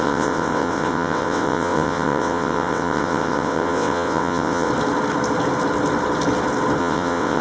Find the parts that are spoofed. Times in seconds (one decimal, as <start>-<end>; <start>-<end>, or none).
0.0-4.7; 6.8-7.4